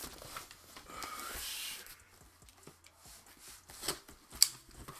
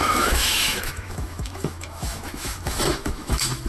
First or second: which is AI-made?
second